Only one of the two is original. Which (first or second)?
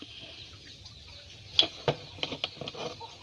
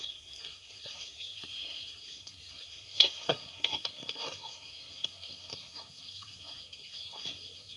first